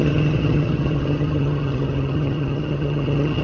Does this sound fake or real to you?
fake